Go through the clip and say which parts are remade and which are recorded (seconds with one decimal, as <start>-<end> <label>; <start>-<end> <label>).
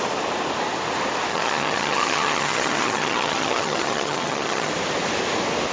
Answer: 0.0-1.3 recorded; 1.3-4.7 remade; 4.7-5.7 recorded